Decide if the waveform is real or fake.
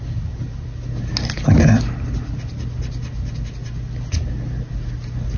real